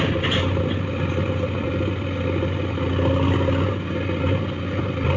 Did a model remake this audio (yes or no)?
no